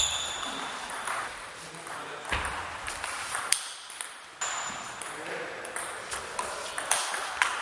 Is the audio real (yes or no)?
yes